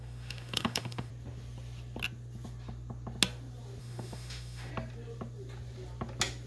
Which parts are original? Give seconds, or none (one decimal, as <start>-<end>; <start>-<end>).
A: 1.1-3.8; 4.7-6.5